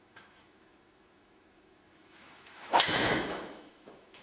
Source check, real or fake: fake